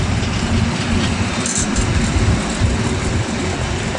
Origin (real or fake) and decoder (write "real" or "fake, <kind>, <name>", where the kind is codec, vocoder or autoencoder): real